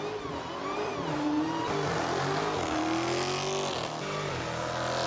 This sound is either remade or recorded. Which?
recorded